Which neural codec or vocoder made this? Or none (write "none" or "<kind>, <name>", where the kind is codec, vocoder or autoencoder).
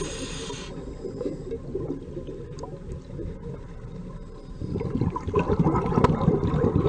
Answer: none